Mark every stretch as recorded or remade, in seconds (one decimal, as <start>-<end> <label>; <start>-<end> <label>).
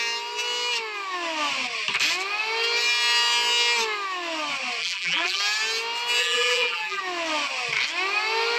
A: 0.0-4.8 recorded; 4.8-5.4 remade; 5.4-6.2 recorded; 6.2-7.0 remade; 7.0-8.6 recorded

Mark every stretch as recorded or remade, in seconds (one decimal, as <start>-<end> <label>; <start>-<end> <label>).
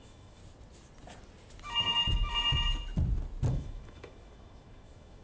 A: 0.0-0.4 remade; 0.4-3.5 recorded; 3.5-5.2 remade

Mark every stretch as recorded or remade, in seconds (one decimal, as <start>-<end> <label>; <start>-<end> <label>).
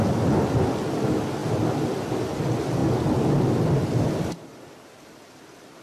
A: 0.0-5.8 recorded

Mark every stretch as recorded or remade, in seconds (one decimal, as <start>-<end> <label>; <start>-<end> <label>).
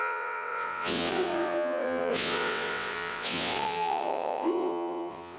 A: 0.0-5.4 remade